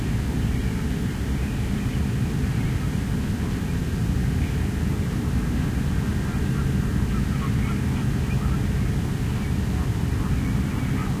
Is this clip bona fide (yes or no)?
yes